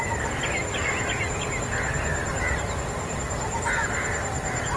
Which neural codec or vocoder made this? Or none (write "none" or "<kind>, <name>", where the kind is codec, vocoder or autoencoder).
none